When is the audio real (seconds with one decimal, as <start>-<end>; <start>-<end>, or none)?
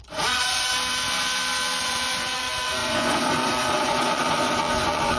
0.7-1.8